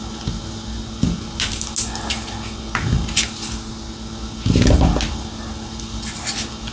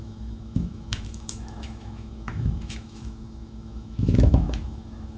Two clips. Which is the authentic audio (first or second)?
first